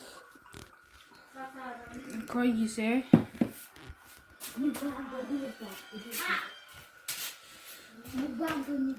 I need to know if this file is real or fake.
real